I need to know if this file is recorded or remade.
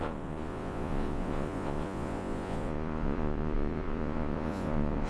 remade